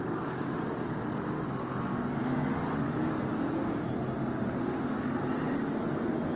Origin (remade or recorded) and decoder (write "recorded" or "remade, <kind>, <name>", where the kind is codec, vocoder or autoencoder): recorded